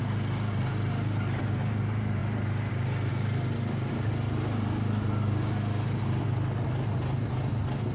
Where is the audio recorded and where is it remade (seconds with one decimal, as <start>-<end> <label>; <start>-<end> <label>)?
0.0-7.9 recorded